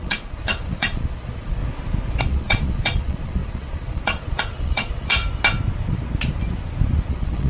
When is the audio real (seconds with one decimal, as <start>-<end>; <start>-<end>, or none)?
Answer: 1.6-2.2; 5.2-7.1